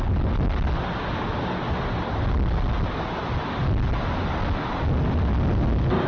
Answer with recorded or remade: recorded